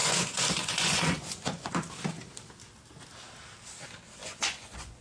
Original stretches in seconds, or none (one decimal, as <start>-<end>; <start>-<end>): 1.7-4.2